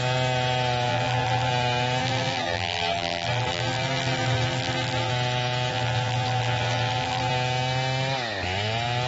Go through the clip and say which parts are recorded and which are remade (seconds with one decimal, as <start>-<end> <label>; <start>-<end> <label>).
0.0-0.9 recorded; 0.9-1.5 remade; 1.5-2.0 recorded; 2.0-5.1 remade; 5.1-5.7 recorded; 5.7-7.3 remade; 7.3-9.1 recorded